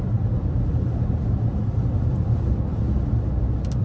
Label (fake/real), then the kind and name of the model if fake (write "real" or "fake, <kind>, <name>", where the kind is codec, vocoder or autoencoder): real